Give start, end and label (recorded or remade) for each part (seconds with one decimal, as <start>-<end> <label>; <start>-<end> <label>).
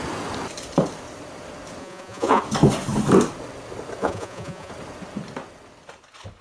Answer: 0.0-1.8 recorded; 1.8-2.4 remade; 2.4-4.0 recorded; 4.0-4.7 remade; 4.7-6.4 recorded